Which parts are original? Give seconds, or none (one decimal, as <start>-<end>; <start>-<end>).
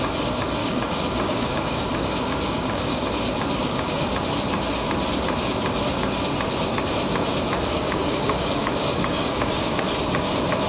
0.0-0.6; 3.1-3.6; 4.1-7.7; 9.8-10.7